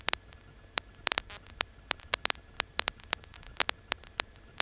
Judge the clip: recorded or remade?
recorded